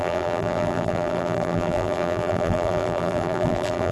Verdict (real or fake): fake